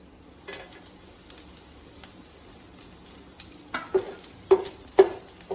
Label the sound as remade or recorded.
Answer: recorded